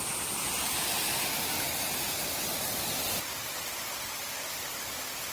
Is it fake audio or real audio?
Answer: fake